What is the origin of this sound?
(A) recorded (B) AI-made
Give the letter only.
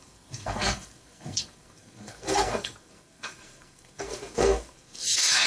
B